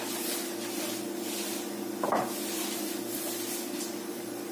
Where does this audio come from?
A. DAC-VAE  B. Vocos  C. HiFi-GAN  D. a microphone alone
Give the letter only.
D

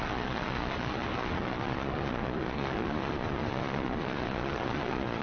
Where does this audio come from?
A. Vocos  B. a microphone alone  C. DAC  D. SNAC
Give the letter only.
A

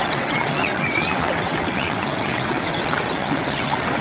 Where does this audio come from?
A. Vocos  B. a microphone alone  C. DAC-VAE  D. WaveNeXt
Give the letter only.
D